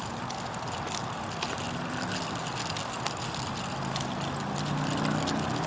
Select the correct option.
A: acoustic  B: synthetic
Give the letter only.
A